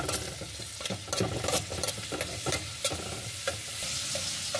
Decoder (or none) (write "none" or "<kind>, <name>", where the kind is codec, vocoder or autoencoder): none